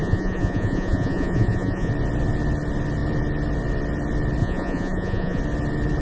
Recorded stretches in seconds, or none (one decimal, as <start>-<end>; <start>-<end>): 1.9-4.4; 5.4-6.0